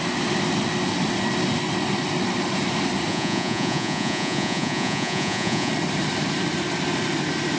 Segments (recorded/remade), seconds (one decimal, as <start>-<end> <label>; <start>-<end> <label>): 0.0-3.1 recorded; 3.1-5.7 remade; 5.7-7.6 recorded